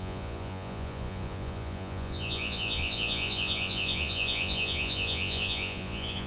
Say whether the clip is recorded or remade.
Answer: remade